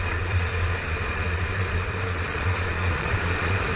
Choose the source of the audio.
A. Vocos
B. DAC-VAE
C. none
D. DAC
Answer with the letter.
A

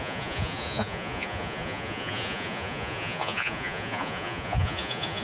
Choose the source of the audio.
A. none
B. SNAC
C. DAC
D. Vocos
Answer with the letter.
D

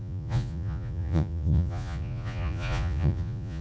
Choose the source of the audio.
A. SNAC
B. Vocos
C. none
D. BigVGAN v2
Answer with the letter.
B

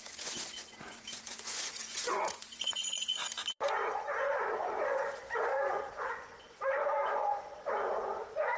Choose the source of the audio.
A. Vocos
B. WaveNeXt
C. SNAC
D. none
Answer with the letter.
A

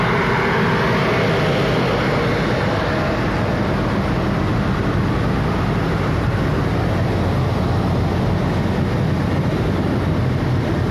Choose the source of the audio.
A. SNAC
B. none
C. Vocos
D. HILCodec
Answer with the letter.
B